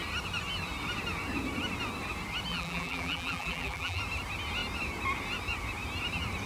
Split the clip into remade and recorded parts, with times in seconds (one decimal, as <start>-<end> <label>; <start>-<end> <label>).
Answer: 0.0-2.5 recorded; 2.5-4.0 remade; 4.0-6.5 recorded